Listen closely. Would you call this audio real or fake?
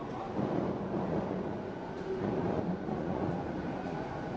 fake